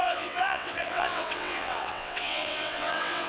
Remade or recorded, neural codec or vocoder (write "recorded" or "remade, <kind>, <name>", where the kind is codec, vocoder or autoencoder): remade, vocoder, WaveNeXt